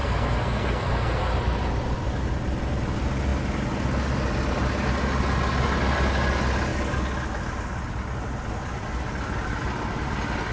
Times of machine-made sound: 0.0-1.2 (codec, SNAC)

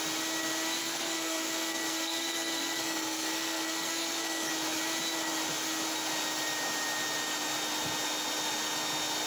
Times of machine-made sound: 0.8-4.5 (codec, SNAC)

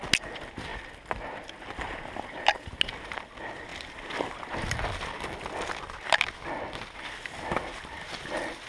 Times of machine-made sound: 0.7-2.7 (vocoder, BigVGAN v2)